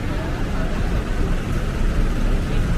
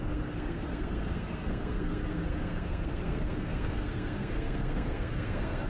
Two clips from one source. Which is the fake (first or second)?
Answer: second